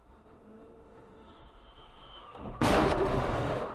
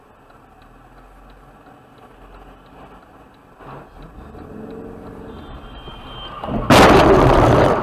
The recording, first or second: second